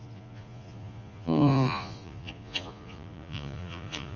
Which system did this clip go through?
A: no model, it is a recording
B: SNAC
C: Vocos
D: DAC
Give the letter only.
C